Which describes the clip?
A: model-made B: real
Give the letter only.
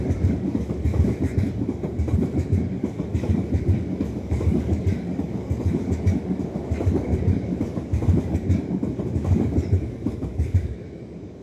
A